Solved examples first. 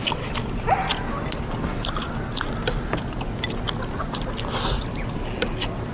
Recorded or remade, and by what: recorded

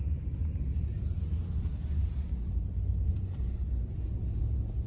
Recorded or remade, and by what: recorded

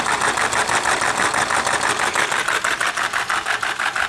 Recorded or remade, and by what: recorded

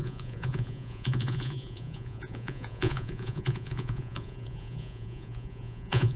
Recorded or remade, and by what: remade, vocoder, Vocos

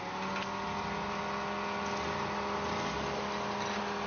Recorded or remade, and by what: recorded